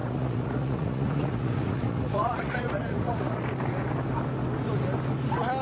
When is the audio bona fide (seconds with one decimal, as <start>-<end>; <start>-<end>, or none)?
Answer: 3.4-5.6